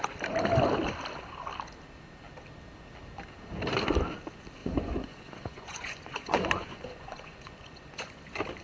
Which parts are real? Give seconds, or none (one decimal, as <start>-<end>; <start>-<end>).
0.0-4.6; 8.2-8.6